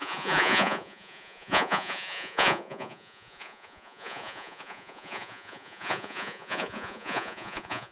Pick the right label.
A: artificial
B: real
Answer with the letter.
A